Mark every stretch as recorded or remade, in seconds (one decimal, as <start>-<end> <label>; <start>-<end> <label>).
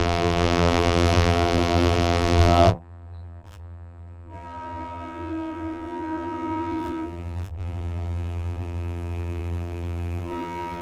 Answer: 0.0-10.8 remade